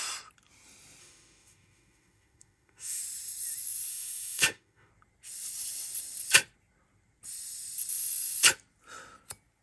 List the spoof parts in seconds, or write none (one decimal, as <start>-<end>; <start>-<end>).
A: 1.0-3.0; 3.9-4.9